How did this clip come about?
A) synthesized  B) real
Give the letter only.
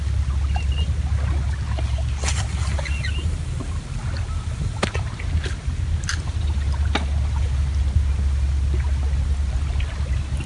B